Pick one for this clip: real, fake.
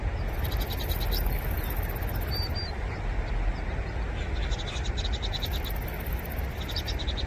real